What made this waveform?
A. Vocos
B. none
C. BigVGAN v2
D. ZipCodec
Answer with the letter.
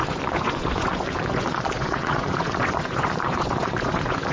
A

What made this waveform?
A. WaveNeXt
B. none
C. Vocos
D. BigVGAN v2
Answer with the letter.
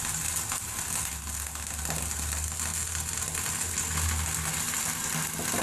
B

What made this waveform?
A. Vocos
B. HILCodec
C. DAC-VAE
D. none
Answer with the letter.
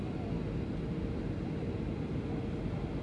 D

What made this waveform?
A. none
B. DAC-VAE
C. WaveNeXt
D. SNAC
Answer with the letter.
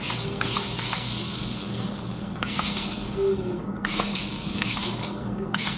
D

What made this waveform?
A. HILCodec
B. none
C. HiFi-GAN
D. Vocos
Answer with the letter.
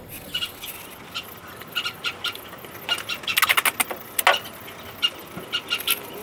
B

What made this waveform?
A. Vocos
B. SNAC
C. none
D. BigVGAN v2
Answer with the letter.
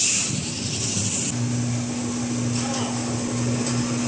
C